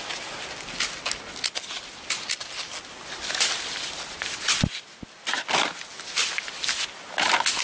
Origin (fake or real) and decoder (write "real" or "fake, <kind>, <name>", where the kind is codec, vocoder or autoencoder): real